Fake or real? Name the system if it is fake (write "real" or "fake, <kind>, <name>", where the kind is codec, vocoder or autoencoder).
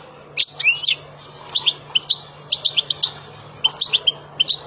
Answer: real